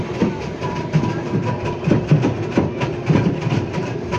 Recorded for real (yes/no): no